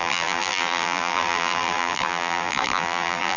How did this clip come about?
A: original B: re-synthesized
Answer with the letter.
B